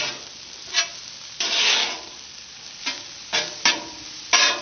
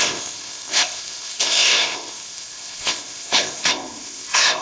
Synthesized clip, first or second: second